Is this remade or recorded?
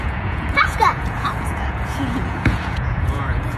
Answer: remade